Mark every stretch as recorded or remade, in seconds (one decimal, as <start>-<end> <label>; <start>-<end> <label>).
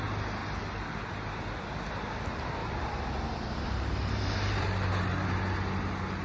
0.0-2.6 recorded; 2.6-4.9 remade; 4.9-6.2 recorded